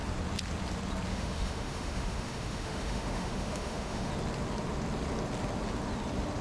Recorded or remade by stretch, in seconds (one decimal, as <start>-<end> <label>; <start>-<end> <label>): 0.0-1.1 recorded; 1.1-4.1 remade; 4.1-6.4 recorded